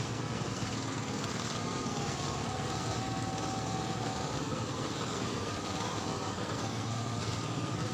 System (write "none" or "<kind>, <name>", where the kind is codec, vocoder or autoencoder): codec, SNAC